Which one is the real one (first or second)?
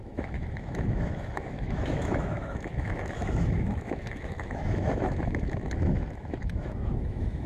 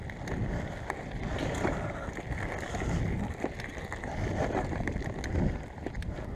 second